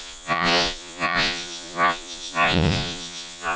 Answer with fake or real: fake